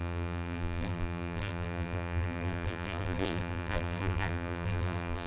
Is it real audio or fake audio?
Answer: fake